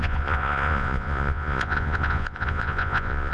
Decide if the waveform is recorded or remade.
remade